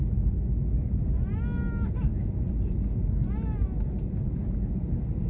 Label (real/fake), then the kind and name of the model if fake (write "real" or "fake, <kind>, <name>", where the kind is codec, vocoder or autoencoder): real